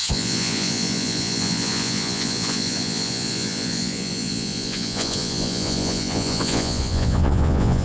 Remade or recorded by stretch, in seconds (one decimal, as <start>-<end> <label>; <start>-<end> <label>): 0.0-7.8 remade